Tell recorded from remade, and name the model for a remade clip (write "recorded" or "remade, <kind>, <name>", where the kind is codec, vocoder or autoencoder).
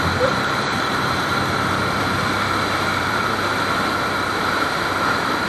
remade, vocoder, BigVGAN v2